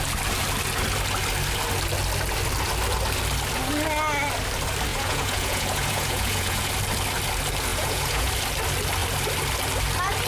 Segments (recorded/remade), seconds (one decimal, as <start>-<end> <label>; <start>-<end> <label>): 0.0-4.9 recorded; 4.9-6.7 remade; 6.7-7.7 recorded; 7.7-8.3 remade; 8.3-10.3 recorded